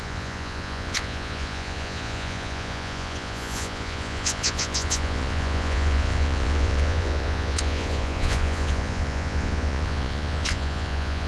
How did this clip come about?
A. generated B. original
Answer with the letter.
A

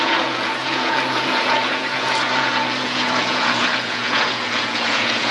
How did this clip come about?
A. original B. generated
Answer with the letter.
B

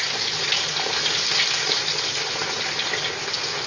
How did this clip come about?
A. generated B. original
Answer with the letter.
B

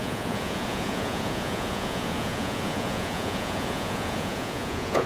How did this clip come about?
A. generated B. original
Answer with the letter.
A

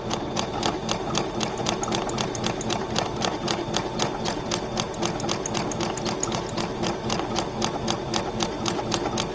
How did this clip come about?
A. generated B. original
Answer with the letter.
B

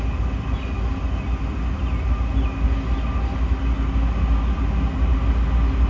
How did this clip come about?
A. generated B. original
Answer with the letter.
B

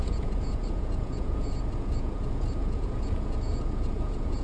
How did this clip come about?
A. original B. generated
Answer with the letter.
B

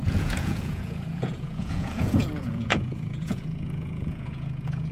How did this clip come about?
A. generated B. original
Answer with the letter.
A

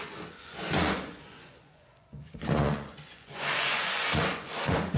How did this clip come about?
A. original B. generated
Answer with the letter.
B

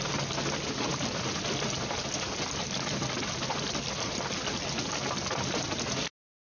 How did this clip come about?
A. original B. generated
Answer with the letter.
A